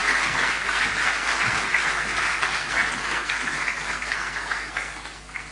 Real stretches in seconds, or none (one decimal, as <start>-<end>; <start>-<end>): none